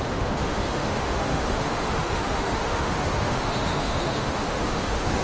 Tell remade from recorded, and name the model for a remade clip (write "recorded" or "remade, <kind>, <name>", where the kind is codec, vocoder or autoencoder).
remade, autoencoder, DAC-VAE